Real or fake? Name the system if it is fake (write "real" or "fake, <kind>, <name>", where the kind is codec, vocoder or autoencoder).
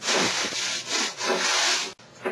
real